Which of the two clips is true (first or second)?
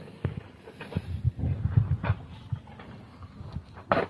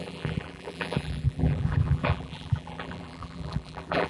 first